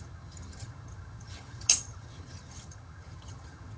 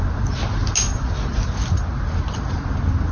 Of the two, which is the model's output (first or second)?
first